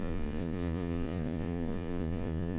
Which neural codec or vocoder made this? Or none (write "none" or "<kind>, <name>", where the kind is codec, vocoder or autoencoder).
vocoder, Vocos